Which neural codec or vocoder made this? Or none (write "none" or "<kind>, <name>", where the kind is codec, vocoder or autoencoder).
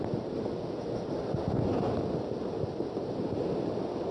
none